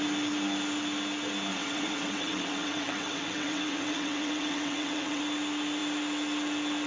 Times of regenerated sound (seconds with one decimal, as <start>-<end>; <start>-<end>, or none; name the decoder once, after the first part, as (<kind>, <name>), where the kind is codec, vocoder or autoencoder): 1.5-5.2 (vocoder, WaveNeXt)